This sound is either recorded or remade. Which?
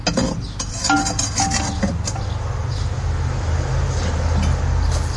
recorded